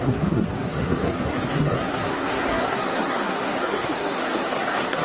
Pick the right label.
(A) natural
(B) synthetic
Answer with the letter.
B